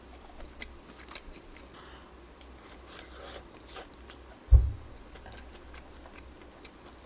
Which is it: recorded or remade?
recorded